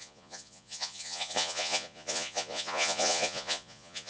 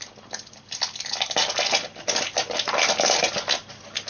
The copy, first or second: first